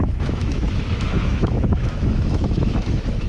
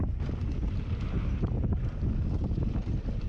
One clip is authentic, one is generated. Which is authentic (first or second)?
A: second